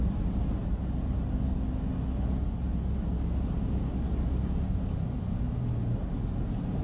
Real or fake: real